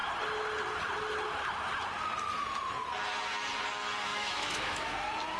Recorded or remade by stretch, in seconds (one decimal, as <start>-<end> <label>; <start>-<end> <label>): 0.0-4.1 recorded; 4.1-4.9 remade; 4.9-5.4 recorded